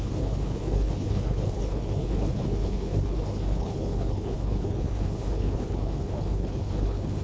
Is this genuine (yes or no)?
no